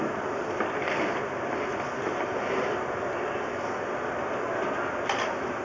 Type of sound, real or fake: real